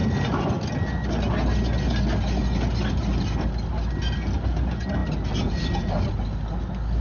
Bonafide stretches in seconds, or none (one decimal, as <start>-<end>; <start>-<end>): 0.0-7.0